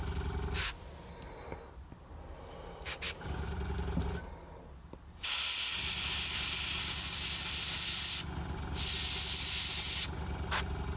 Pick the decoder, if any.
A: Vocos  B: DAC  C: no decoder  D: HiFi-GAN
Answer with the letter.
C